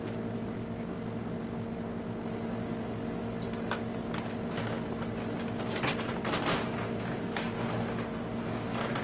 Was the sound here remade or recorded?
recorded